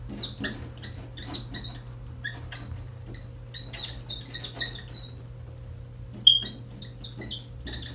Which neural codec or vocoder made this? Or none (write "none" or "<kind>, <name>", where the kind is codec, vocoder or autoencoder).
none